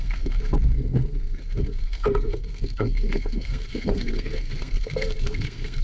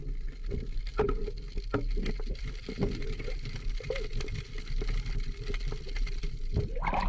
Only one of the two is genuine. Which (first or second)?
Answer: second